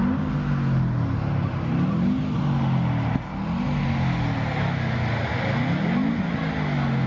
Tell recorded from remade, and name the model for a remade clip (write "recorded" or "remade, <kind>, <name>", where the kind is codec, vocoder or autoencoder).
recorded